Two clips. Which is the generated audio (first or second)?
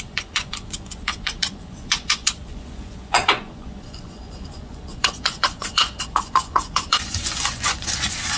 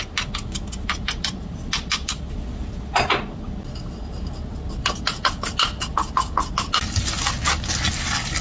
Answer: first